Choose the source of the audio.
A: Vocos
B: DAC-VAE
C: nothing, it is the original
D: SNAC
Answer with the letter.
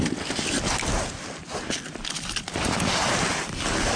C